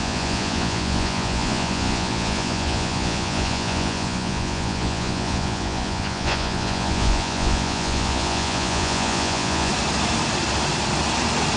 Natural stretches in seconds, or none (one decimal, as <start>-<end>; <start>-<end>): 9.7-11.6